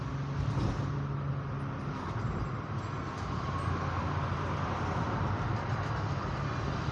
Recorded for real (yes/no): yes